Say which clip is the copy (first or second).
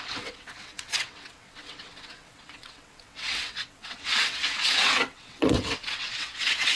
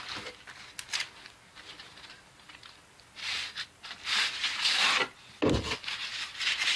first